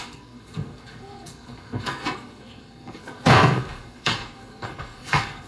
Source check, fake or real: fake